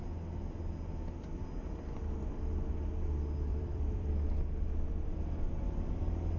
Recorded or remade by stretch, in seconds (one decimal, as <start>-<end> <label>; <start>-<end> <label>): 0.0-3.5 recorded; 3.5-5.6 remade; 5.6-6.4 recorded